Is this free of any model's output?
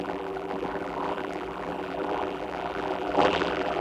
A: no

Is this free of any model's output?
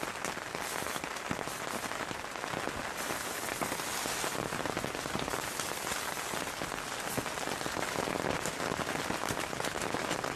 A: yes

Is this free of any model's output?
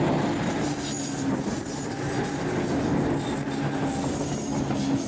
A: yes